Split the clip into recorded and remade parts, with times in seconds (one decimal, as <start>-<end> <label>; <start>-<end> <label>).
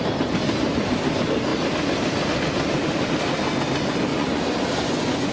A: 0.0-4.1 recorded; 4.1-5.3 remade